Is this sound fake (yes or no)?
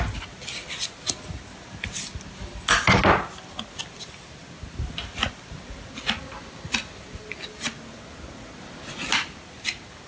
no